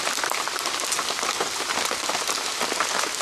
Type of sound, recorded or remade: recorded